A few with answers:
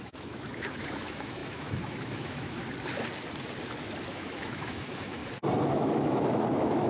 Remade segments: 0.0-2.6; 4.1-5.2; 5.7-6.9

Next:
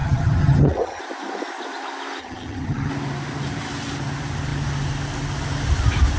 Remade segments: 0.0-1.0; 2.2-2.9

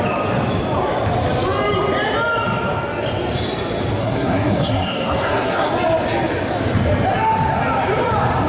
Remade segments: 4.0-5.7

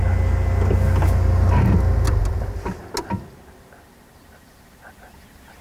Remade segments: none

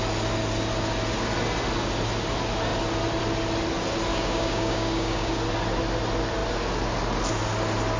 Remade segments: 4.1-5.3